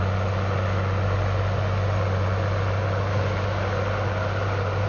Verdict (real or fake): real